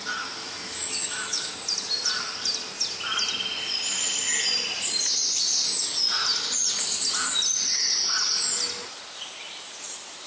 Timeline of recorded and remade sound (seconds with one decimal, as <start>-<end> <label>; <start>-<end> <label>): 0.0-0.4 recorded; 0.4-1.5 remade; 1.5-10.3 recorded